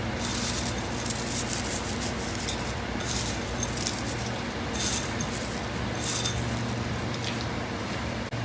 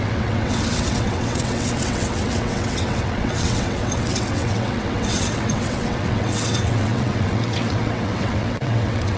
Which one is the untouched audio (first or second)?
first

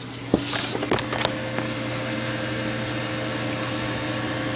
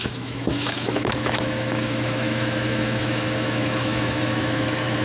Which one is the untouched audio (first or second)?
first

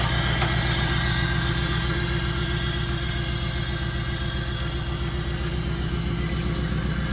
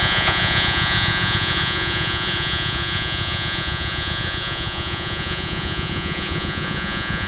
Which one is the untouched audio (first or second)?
first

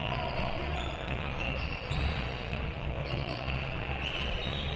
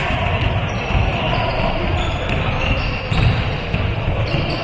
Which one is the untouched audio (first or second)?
second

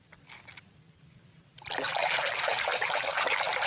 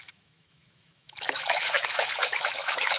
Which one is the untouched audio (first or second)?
first